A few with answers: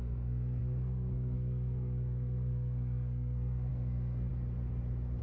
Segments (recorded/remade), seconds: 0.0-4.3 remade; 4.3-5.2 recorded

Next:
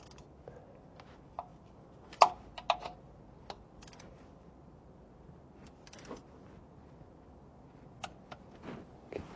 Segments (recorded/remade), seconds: 0.0-9.4 recorded

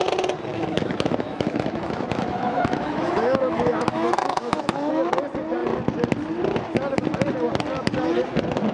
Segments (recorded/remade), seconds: 0.0-0.5 recorded; 0.5-4.9 remade; 4.9-8.7 recorded

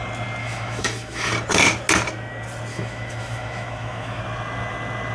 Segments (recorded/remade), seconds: 0.0-0.4 recorded; 0.4-1.3 remade; 1.3-2.7 recorded; 2.7-4.2 remade; 4.2-5.1 recorded

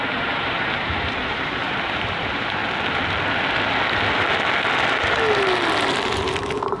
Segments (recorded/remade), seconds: 0.0-2.6 remade; 2.6-6.2 recorded; 6.2-6.8 remade

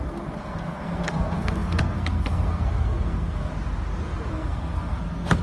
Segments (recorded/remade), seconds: 0.0-3.5 remade; 3.5-4.3 recorded; 4.3-5.4 remade

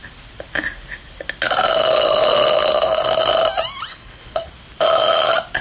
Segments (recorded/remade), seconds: 0.0-3.9 recorded; 3.9-4.5 remade; 4.5-5.6 recorded

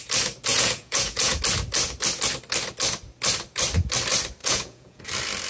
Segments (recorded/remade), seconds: 0.0-0.5 recorded; 0.5-1.4 remade; 1.4-4.4 recorded; 4.4-5.0 remade; 5.0-5.5 recorded